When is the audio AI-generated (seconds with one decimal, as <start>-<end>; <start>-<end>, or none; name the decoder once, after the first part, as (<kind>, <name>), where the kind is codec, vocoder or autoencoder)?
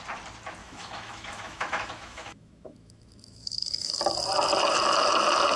0.6-4.0 (autoencoder, DAC-VAE)